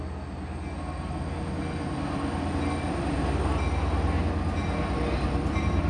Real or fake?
real